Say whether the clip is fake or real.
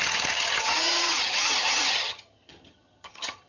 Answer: fake